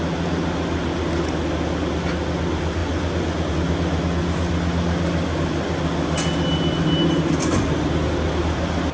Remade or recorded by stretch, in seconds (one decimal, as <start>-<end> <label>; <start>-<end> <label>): 0.0-8.9 recorded